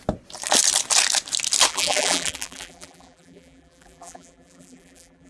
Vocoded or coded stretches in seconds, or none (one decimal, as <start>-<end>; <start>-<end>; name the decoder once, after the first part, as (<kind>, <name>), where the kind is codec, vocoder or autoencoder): 1.7-5.3 (vocoder, BigVGAN v2)